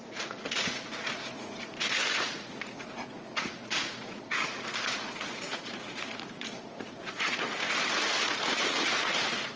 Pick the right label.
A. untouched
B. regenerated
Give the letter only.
B